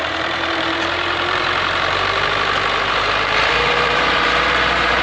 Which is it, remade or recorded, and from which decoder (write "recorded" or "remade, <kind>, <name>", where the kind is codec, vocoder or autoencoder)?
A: remade, vocoder, BigVGAN v2